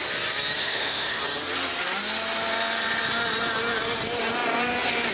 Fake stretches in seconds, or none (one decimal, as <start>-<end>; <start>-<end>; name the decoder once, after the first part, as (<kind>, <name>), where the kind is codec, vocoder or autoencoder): 0.6-1.2 (autoencoder, DAC-VAE)